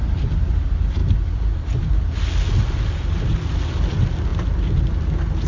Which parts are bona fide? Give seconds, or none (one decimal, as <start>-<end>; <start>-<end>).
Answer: 0.0-5.5